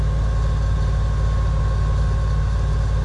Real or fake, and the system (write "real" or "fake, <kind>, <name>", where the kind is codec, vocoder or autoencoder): real